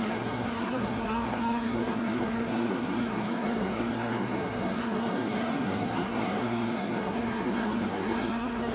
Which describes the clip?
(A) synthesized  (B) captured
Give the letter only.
A